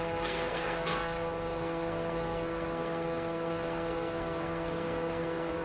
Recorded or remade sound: remade